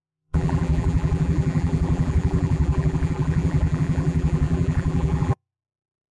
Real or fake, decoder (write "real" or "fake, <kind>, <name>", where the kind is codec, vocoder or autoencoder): fake, vocoder, BigVGAN v2